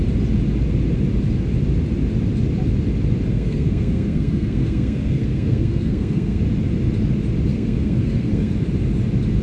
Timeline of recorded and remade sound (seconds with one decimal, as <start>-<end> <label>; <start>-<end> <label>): 0.0-3.3 recorded; 3.3-6.4 remade; 6.4-7.5 recorded; 7.5-8.5 remade; 8.5-9.4 recorded

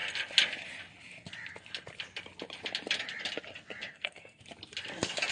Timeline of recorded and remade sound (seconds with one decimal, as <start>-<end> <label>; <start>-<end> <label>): 0.0-3.9 recorded; 3.9-4.4 remade; 4.4-5.3 recorded